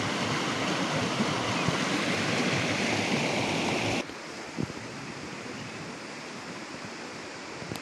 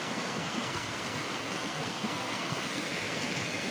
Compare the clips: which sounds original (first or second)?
first